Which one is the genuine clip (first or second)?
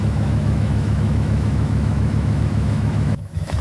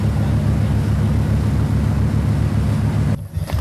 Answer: second